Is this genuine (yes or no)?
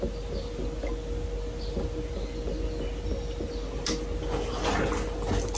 yes